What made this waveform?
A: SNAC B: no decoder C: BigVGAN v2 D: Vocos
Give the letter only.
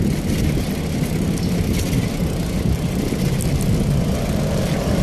B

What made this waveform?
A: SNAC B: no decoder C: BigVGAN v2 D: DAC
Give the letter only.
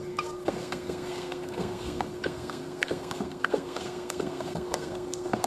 A